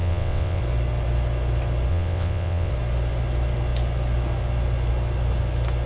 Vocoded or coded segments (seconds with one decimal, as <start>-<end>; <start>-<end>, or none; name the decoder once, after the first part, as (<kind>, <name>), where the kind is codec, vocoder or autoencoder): 0.0-0.6 (vocoder, WaveNeXt); 1.9-2.7